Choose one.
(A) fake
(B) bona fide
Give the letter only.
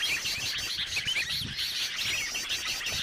B